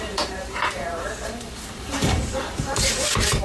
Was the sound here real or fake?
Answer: fake